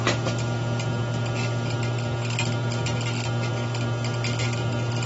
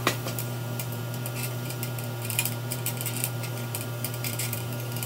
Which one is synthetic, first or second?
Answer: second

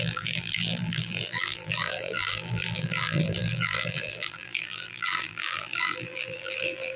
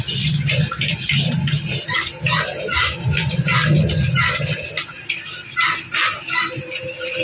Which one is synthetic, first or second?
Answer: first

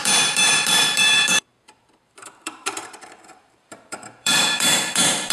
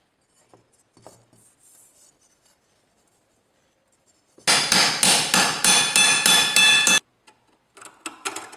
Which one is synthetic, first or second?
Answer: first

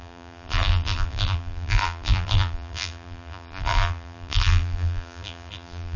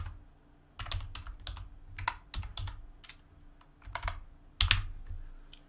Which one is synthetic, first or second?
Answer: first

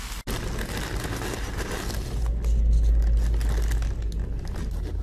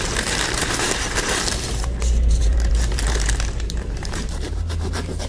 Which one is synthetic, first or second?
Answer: second